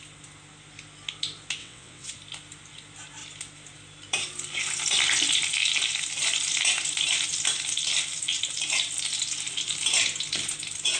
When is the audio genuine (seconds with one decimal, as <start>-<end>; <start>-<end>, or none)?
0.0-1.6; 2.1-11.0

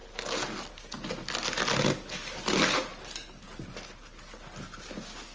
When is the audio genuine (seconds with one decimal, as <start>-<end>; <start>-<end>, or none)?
0.0-5.3

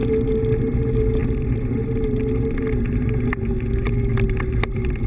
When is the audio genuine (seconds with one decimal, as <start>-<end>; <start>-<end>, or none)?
0.0-5.1

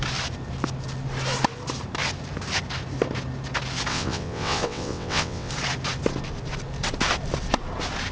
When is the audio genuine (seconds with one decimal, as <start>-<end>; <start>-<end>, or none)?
0.0-3.9; 5.5-8.1